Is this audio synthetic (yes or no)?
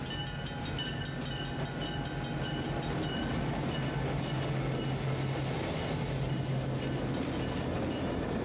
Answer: no